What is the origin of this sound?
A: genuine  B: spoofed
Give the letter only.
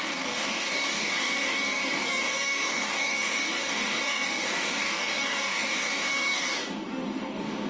B